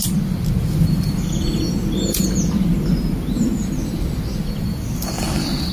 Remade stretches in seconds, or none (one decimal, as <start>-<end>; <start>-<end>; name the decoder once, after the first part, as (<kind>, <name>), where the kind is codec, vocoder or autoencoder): 4.6-5.7 (vocoder, BigVGAN v2)